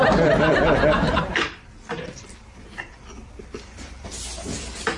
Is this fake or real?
fake